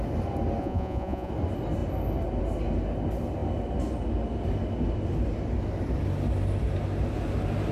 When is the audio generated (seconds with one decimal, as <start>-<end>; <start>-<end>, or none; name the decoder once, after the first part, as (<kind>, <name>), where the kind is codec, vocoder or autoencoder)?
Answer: 0.6-1.3 (vocoder, Vocos)